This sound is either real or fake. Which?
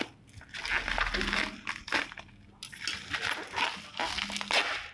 real